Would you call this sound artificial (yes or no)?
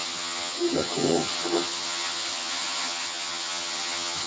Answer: yes